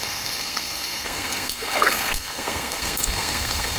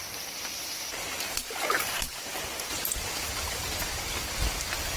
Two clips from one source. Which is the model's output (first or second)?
first